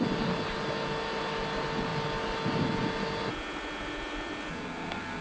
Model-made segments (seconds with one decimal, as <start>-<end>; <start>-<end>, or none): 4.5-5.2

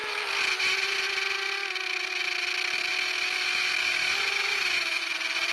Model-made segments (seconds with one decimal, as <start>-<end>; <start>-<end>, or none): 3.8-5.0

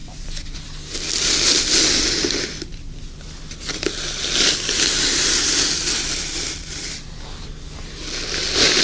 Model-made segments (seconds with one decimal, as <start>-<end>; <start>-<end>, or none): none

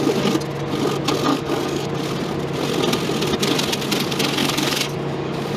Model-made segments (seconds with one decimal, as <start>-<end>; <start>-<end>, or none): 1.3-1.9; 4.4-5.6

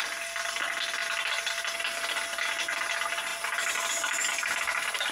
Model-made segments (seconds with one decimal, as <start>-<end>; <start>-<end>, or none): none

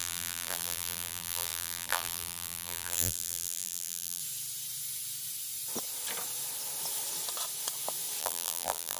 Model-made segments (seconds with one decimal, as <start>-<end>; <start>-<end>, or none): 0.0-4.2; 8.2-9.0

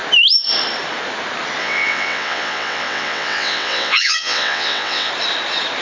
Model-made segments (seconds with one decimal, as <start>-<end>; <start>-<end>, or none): 1.6-5.1